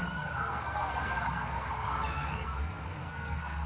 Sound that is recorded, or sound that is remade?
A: remade